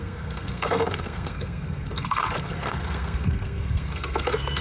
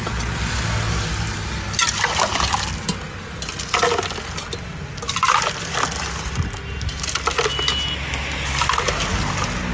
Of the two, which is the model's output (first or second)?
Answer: first